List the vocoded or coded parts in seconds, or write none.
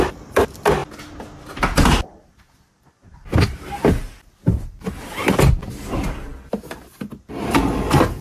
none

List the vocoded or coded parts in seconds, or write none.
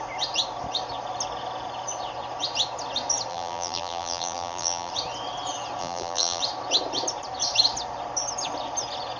3.3-4.9; 5.8-6.4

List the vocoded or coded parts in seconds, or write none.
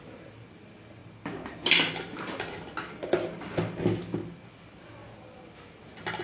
none